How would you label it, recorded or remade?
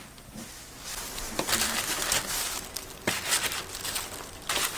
recorded